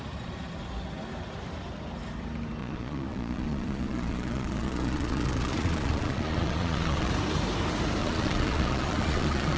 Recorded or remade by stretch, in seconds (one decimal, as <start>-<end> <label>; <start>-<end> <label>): 0.0-2.6 recorded; 2.6-7.1 remade; 7.1-8.0 recorded; 8.0-9.6 remade